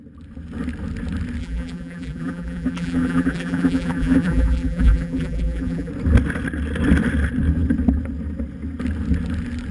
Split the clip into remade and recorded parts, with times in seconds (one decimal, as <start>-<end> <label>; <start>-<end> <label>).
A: 0.0-1.4 recorded; 1.4-5.9 remade; 5.9-9.7 recorded